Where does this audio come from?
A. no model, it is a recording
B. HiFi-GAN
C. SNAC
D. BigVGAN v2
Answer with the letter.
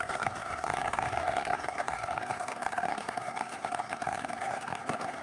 C